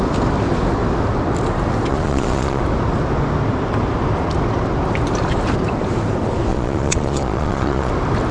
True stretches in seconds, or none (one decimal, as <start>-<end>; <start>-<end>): 0.0-1.9; 2.6-6.5; 7.9-8.3